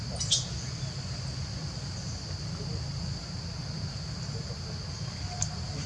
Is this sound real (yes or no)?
yes